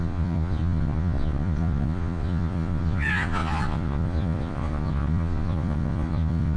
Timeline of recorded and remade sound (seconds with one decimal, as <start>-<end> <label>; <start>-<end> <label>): 0.0-6.6 remade